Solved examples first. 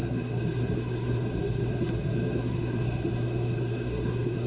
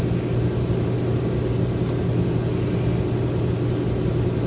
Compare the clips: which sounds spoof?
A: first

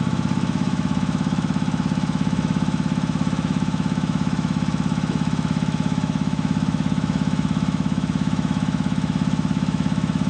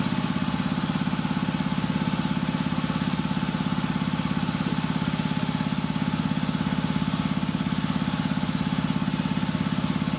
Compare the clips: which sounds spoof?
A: first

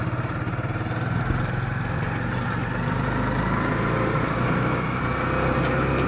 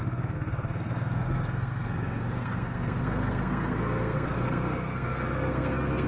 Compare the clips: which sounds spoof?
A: second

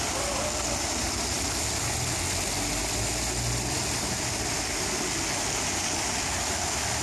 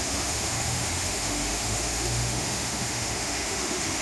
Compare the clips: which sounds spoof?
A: second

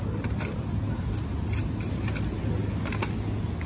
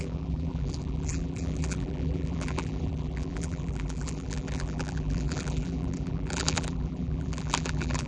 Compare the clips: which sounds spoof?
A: second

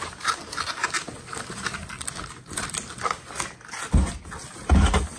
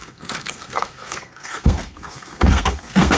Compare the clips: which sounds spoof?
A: second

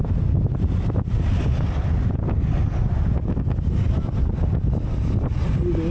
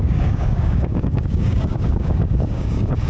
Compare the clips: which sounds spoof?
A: second